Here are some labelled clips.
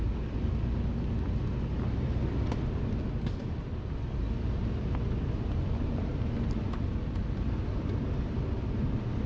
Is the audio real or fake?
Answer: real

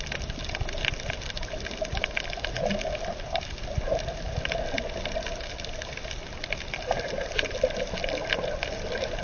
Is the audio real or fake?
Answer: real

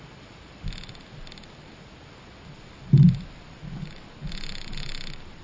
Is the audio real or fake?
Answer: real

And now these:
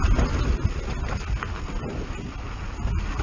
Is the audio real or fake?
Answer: real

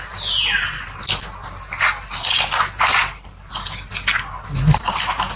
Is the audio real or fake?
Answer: real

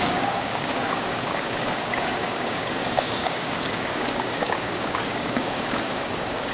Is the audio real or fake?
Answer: fake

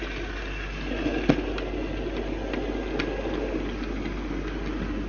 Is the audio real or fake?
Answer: real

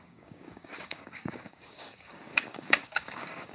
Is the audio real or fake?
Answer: fake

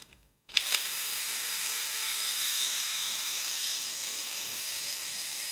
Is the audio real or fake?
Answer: fake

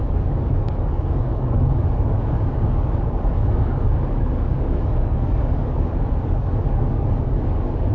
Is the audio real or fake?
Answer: fake